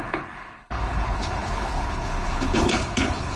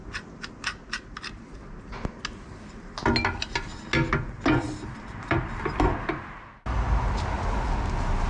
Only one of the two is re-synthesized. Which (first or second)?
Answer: first